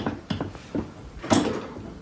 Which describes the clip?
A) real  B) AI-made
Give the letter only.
A